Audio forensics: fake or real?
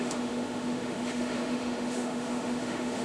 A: fake